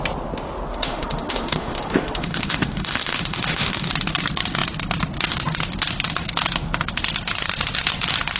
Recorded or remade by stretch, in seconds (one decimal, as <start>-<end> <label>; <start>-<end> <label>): 0.0-0.7 recorded; 0.7-3.9 remade; 3.9-8.4 recorded